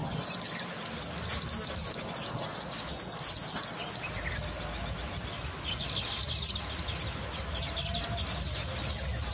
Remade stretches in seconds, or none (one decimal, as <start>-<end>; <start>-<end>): none